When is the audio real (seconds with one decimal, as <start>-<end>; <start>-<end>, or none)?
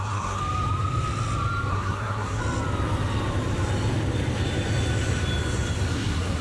0.4-1.7; 2.4-5.9